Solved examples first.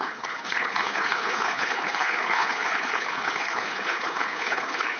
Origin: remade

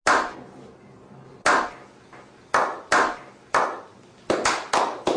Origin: recorded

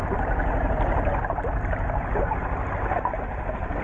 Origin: recorded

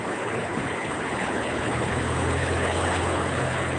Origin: remade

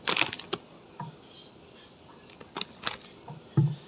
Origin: recorded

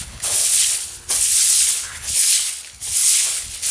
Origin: remade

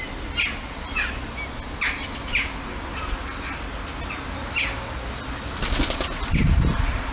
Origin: recorded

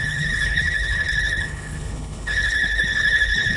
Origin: remade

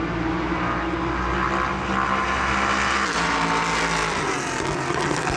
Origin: recorded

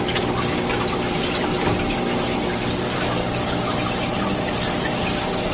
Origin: recorded